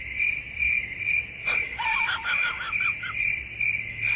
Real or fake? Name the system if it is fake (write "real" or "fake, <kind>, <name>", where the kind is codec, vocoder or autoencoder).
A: real